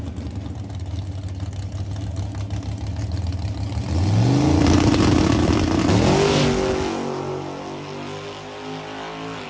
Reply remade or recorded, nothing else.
recorded